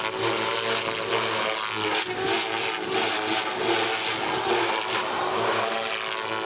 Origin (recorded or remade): recorded